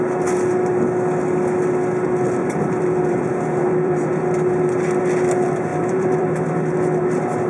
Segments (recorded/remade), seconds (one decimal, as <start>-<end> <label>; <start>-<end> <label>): 0.0-2.4 recorded; 2.4-4.2 remade; 4.2-5.7 recorded; 5.7-6.3 remade; 6.3-7.5 recorded